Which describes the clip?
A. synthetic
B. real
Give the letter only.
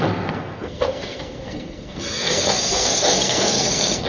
A